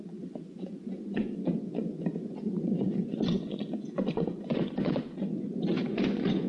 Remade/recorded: remade